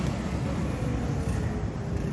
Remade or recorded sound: recorded